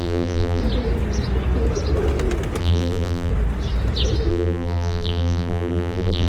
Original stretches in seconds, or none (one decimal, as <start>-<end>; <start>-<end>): 0.6-2.6; 3.3-4.3